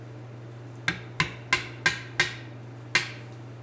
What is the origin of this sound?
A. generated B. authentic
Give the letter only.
B